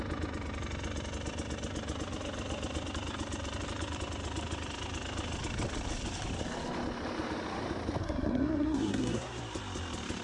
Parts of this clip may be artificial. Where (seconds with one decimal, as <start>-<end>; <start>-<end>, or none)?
8.0-9.4